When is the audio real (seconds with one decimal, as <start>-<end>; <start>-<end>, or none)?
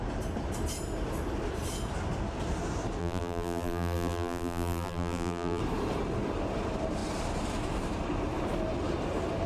0.0-3.0; 5.6-9.5